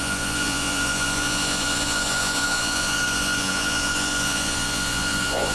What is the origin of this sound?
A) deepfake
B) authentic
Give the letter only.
A